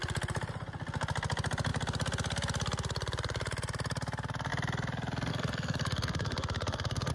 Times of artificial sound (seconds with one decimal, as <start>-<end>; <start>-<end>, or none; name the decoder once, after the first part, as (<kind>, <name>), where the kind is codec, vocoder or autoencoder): 5.3-7.1 (codec, SNAC)